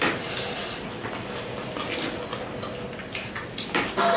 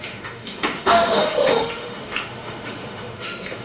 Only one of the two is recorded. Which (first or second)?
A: first